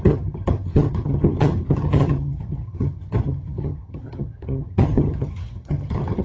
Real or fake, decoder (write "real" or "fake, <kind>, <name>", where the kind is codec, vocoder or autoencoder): fake, vocoder, HiFi-GAN